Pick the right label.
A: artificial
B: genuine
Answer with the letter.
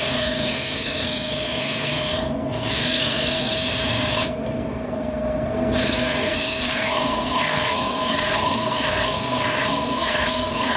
A